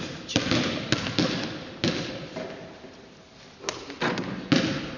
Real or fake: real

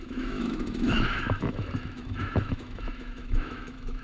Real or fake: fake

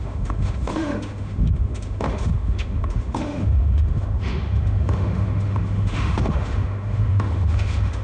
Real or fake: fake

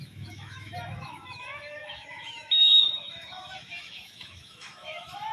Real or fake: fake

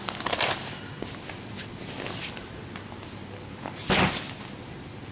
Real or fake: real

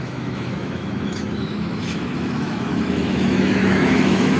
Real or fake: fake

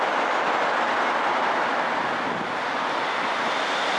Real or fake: real